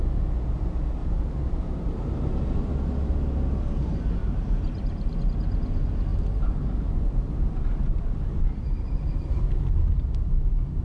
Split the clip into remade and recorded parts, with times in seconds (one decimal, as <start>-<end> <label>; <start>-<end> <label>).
0.0-1.0 recorded; 1.0-2.7 remade; 2.7-4.2 recorded; 4.2-5.2 remade; 5.2-6.1 recorded; 6.1-9.5 remade; 9.5-10.8 recorded